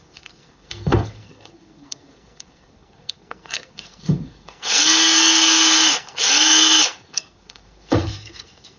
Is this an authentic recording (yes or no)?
no